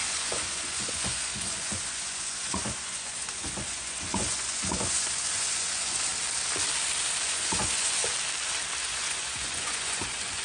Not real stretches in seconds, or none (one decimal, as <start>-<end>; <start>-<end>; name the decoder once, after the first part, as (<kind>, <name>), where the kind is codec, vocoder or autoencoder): 0.0-6.1 (vocoder, Vocos); 7.2-8.0; 8.8-10.4